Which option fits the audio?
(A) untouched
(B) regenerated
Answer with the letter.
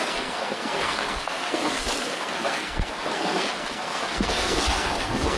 B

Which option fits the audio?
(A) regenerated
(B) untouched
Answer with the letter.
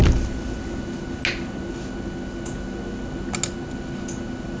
B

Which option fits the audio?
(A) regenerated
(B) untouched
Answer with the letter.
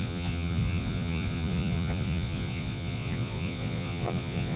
A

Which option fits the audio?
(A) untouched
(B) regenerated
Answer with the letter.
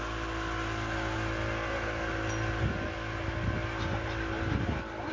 A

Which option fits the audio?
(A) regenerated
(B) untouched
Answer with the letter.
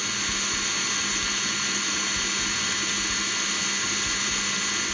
B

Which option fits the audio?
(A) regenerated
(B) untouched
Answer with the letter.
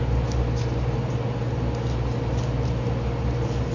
B